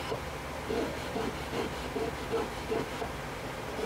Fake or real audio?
real